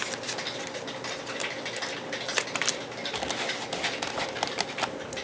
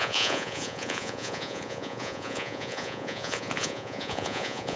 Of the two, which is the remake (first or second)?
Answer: second